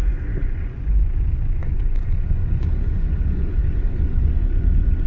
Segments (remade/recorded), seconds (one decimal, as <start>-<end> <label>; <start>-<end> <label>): 0.0-5.1 remade